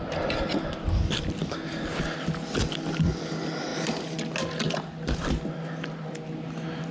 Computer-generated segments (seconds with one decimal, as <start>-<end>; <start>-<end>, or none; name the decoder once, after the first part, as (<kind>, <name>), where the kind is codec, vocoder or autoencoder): none